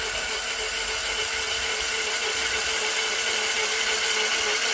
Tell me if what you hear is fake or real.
real